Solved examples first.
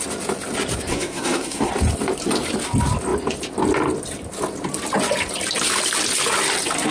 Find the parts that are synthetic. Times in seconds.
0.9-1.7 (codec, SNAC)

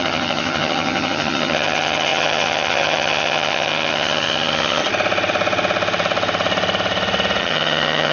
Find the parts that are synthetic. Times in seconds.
0.0-4.8 (vocoder, HiFi-GAN); 7.4-8.1

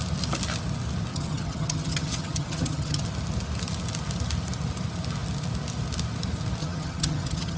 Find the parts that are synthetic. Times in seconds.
1.1-3.0 (vocoder, HiFi-GAN); 6.6-7.6

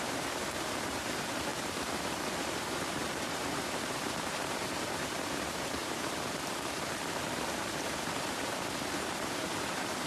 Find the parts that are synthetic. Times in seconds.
0.0-10.1 (vocoder, BigVGAN v2)

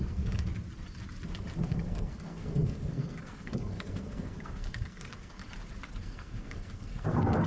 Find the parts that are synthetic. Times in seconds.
0.0-0.5 (codec, SNAC); 1.6-5.4; 5.9-7.5

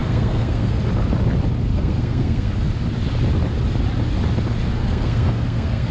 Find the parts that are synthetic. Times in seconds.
0.0-0.8 (codec, SNAC); 1.7-2.5; 4.8-5.9

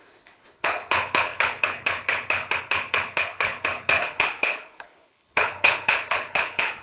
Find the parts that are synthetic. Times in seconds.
0.0-6.8 (codec, HILCodec)

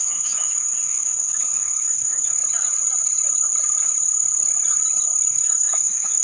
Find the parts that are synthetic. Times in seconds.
0.0-2.4 (autoencoder, DAC-VAE); 5.3-6.2